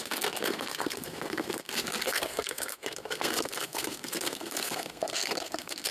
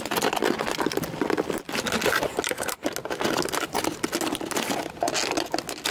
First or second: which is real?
second